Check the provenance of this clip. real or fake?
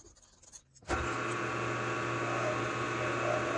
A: real